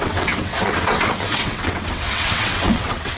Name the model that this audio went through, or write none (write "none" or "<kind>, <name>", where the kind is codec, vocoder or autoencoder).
vocoder, WaveNeXt